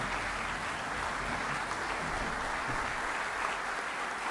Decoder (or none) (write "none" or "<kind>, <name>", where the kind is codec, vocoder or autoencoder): none